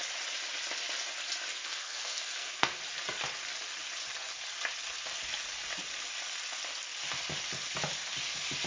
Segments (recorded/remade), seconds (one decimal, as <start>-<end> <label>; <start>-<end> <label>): 0.0-1.5 recorded; 1.5-2.8 remade; 2.8-8.7 recorded